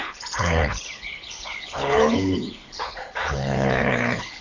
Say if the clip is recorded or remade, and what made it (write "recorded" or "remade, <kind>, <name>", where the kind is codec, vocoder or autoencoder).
remade, codec, HILCodec